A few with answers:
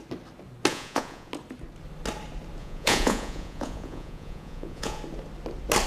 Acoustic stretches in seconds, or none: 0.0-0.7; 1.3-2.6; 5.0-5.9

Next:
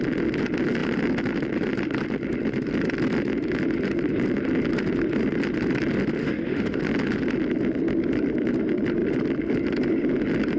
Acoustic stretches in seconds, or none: 0.0-6.2; 6.8-10.6

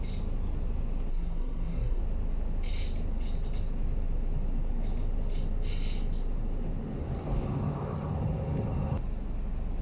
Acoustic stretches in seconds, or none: 0.0-1.1; 2.0-9.8

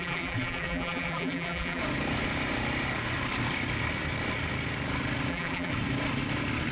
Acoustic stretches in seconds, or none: 1.8-5.3; 5.7-6.7

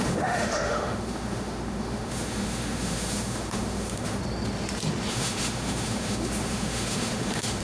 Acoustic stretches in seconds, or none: 4.2-5.1